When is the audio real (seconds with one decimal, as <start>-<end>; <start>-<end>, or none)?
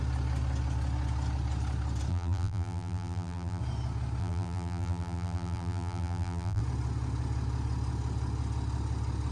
0.0-2.1; 3.6-4.2; 6.6-9.3